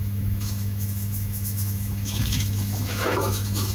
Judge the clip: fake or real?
fake